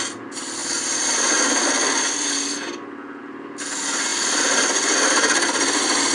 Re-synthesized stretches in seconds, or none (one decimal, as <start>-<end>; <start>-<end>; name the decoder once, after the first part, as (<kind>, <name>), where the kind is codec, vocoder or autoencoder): 0.0-0.6 (vocoder, BigVGAN v2); 3.2-6.1